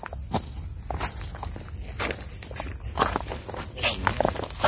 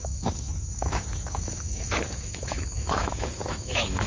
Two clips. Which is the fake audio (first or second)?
second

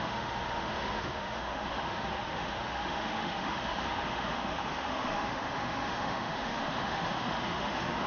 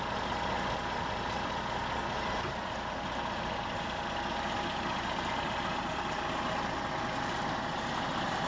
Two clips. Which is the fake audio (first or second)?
first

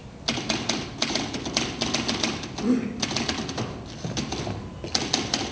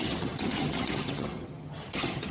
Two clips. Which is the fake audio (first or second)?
second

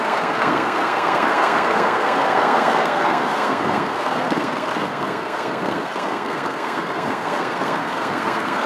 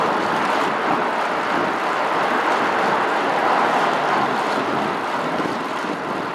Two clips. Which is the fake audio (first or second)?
first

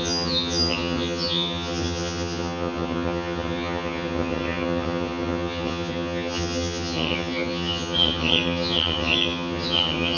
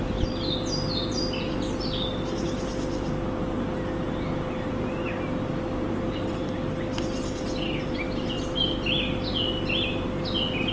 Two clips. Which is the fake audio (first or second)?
first